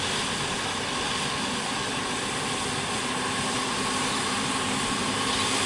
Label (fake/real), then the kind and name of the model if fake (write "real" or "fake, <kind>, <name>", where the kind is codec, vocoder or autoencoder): fake, vocoder, BigVGAN v2